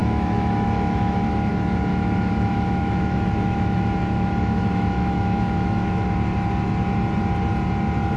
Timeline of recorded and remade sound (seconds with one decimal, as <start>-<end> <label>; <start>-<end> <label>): 0.0-1.5 remade; 1.5-1.9 recorded; 1.9-6.1 remade; 6.1-8.2 recorded